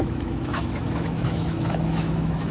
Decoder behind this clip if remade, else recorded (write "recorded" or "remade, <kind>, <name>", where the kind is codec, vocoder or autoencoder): remade, autoencoder, DAC-VAE